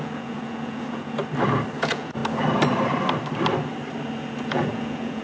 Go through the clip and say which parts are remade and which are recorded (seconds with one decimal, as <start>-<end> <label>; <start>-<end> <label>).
0.0-1.2 remade; 1.2-1.8 recorded; 1.8-2.2 remade; 2.2-4.4 recorded; 4.4-5.2 remade